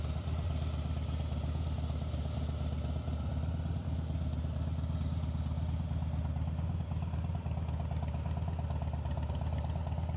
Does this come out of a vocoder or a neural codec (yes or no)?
no